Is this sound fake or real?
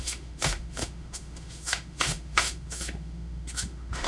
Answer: fake